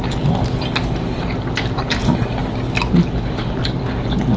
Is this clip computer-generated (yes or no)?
no